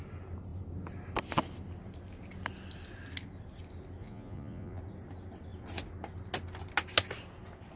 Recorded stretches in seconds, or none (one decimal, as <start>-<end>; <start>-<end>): 0.0-4.0; 4.8-7.8